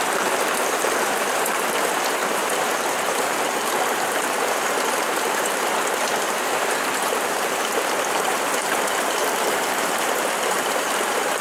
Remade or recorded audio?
remade